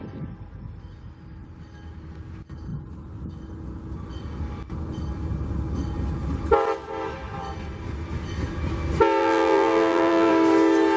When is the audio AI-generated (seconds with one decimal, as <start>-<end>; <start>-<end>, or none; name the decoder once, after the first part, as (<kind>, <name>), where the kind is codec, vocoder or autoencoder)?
9.2-10.3 (vocoder, BigVGAN v2)